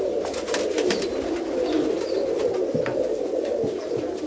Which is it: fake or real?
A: real